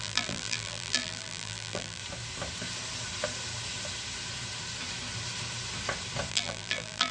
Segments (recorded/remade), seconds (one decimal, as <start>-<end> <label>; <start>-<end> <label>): 0.0-2.0 remade; 2.0-6.3 recorded; 6.3-7.1 remade